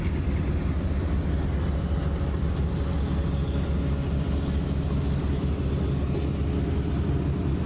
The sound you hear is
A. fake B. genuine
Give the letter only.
B